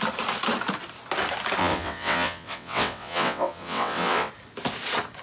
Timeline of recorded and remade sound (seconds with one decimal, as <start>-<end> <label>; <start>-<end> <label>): 0.0-1.6 recorded; 1.6-4.3 remade; 4.3-5.2 recorded

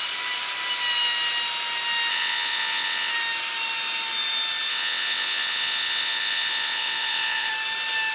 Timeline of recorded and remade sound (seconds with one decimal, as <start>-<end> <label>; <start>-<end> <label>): 0.0-2.1 recorded; 2.1-3.1 remade; 3.1-4.7 recorded; 4.7-7.5 remade; 7.5-8.1 recorded

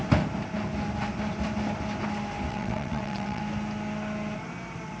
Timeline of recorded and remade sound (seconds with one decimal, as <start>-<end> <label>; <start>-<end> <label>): 0.0-2.5 recorded; 2.5-3.4 remade; 3.4-5.0 recorded

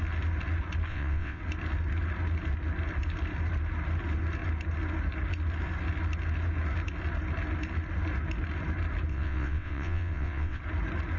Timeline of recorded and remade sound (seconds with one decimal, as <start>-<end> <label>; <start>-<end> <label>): 0.0-0.9 recorded; 0.9-1.4 remade; 1.4-9.1 recorded; 9.1-10.6 remade; 10.6-11.2 recorded